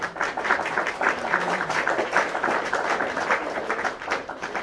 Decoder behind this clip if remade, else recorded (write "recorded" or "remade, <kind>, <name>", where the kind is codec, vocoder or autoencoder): remade, vocoder, BigVGAN v2